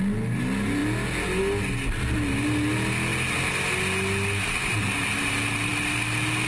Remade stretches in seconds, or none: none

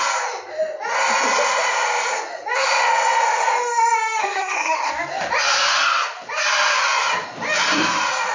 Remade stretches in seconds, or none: 4.2-4.9 (codec, SNAC)